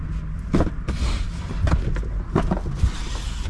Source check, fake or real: real